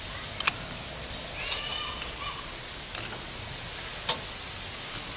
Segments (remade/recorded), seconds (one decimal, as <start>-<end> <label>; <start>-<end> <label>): 0.0-5.2 recorded